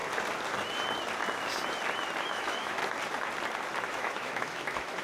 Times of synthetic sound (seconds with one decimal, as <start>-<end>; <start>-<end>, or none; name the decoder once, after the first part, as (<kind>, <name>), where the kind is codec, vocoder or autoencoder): 2.2-2.8 (autoencoder, DAC-VAE); 3.8-5.0